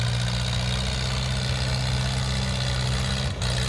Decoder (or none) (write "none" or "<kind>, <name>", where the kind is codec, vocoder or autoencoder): none